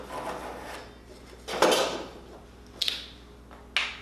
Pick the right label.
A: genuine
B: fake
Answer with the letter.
A